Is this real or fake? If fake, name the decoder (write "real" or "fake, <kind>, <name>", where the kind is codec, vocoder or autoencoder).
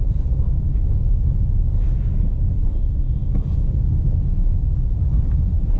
real